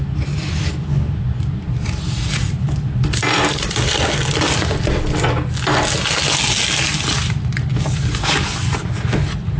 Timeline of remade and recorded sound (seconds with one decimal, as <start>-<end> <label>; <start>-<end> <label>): 0.0-9.6 recorded